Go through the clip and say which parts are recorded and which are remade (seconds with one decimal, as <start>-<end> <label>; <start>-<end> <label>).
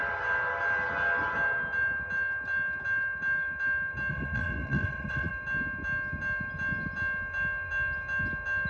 0.0-4.1 recorded; 4.1-5.3 remade; 5.3-8.7 recorded